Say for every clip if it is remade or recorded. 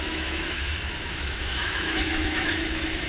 remade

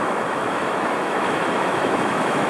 remade